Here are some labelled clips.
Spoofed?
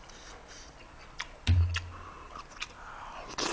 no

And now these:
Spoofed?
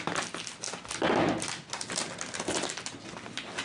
no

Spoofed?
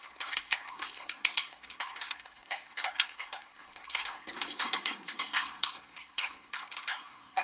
yes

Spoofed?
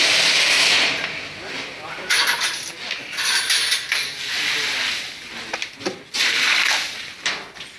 no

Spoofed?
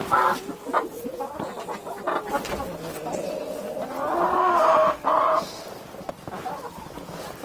no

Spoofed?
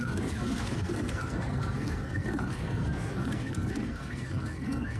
yes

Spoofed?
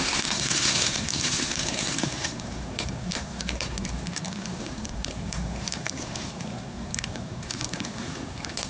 yes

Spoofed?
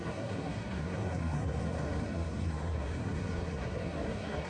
yes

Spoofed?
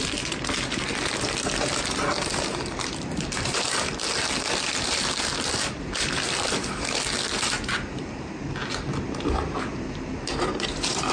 no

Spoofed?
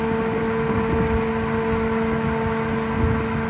no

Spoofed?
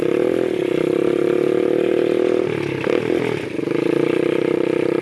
no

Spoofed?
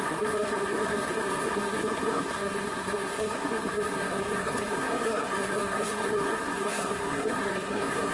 yes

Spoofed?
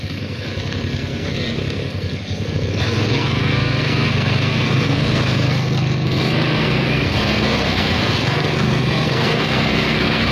yes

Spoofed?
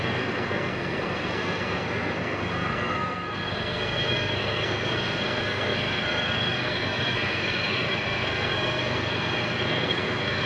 yes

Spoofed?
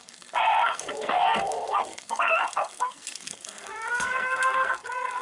yes